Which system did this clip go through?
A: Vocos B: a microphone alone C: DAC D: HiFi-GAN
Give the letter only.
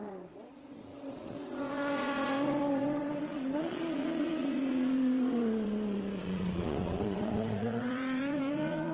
A